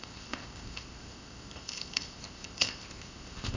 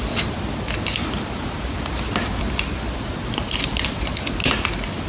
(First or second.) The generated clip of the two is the first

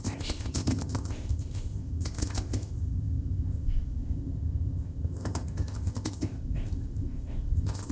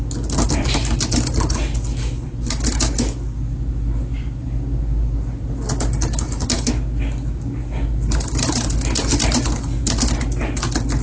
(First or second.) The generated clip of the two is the first